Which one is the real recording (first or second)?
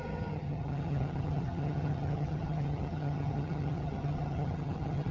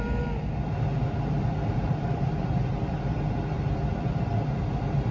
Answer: second